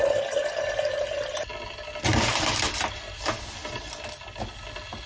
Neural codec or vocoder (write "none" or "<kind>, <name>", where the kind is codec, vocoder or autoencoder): none